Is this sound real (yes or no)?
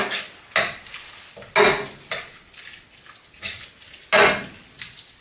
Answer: yes